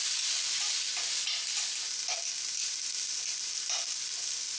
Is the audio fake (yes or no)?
no